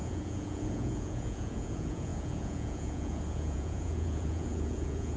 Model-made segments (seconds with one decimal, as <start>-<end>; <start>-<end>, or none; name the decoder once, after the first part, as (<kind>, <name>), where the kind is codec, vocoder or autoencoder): 0.0-5.2 (vocoder, Vocos)